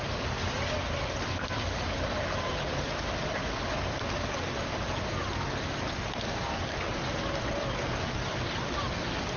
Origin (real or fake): real